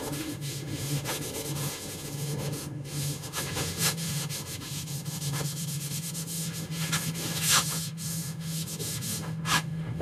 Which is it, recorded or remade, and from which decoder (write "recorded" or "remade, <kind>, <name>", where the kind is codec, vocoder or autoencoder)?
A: remade, autoencoder, DAC-VAE